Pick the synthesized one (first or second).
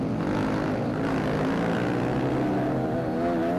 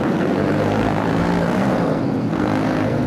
second